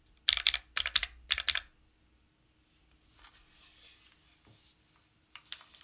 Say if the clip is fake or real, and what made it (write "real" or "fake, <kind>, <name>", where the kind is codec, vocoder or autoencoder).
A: real